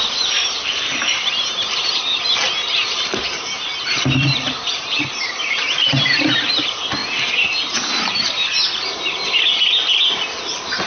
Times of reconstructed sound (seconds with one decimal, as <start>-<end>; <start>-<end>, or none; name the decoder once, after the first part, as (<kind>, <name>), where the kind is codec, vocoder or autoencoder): 0.0-7.0 (vocoder, BigVGAN v2); 10.4-10.9